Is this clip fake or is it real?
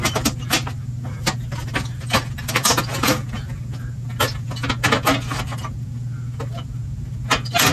real